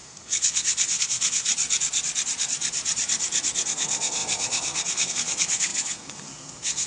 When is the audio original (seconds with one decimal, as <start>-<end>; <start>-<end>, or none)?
1.5-3.7